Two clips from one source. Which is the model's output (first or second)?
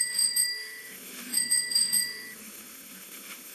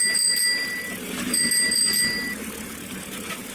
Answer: first